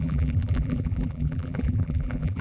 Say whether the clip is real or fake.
fake